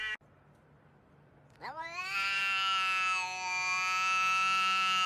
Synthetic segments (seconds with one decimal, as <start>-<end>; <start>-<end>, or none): 1.6-2.4